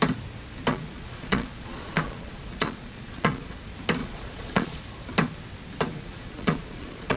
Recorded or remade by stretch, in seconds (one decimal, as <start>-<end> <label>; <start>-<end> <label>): 0.0-0.7 recorded; 0.7-3.6 remade; 3.6-4.0 recorded; 4.0-4.8 remade; 4.8-5.9 recorded; 5.9-7.2 remade